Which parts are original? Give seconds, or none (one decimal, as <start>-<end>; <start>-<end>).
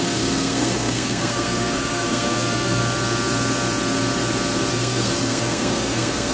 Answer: 2.8-4.7